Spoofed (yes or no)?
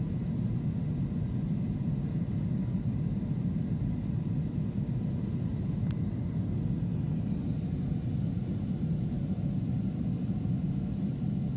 no